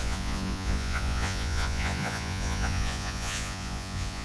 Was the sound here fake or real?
fake